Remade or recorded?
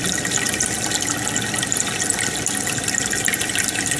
recorded